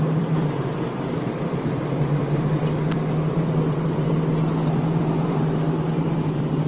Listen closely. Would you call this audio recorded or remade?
remade